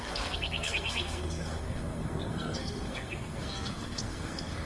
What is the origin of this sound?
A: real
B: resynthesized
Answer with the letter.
B